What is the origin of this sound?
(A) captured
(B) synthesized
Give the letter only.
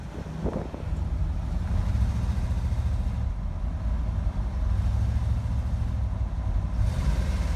A